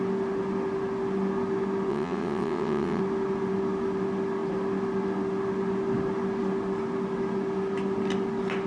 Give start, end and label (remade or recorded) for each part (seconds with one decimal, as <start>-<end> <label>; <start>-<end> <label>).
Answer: 0.0-1.9 recorded; 1.9-3.0 remade; 3.0-8.7 recorded